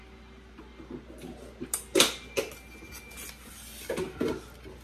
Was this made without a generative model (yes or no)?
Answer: yes